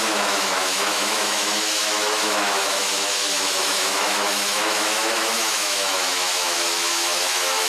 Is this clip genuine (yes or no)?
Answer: no